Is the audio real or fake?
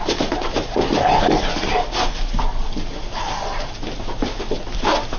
real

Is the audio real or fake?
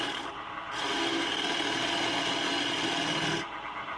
real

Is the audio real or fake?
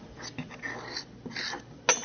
real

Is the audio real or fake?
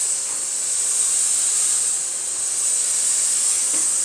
real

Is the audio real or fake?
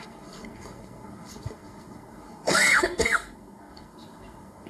fake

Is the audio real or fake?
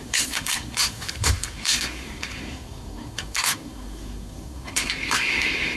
fake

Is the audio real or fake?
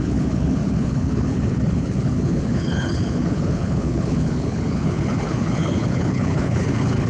fake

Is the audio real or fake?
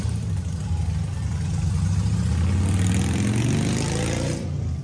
real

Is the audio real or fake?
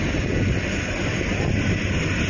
real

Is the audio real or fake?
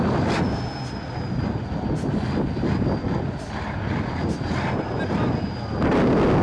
real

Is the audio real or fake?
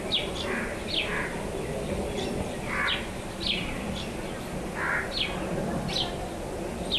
real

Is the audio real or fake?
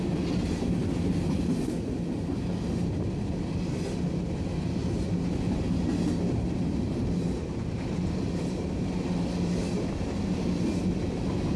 real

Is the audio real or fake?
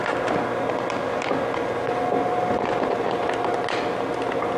real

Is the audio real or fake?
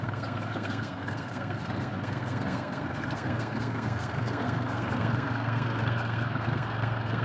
fake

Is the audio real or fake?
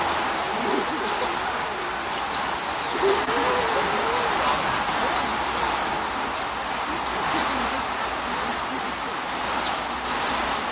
real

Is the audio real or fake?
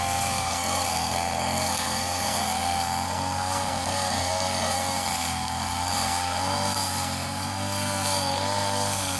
fake